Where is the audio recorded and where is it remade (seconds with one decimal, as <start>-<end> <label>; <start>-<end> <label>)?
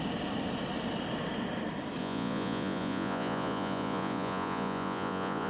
0.0-2.0 recorded; 2.0-5.5 remade